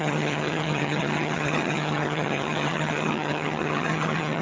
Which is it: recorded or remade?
remade